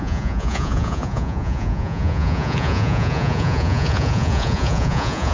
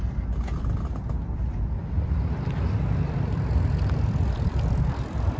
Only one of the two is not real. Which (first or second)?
first